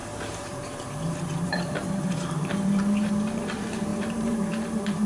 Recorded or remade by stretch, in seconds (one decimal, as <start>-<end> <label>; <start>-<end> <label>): 0.0-3.1 remade; 3.1-3.9 recorded; 3.9-5.1 remade